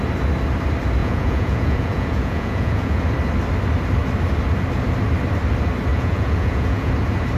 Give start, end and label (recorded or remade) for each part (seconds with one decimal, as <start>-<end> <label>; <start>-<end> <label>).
0.0-1.0 recorded; 1.0-3.0 remade; 3.0-5.9 recorded; 5.9-6.9 remade; 6.9-7.4 recorded